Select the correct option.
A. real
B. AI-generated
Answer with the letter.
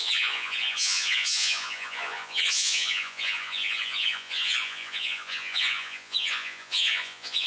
B